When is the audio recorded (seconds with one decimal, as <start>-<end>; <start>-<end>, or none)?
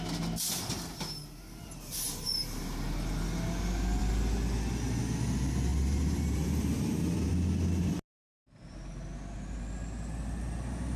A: 0.0-5.7; 7.3-11.0